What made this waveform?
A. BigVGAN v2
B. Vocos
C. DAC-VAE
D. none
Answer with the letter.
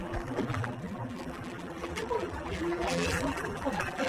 A